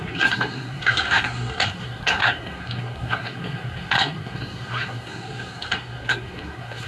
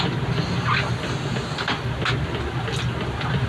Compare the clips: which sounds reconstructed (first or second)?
first